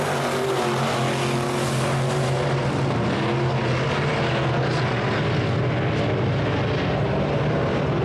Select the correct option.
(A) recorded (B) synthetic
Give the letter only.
A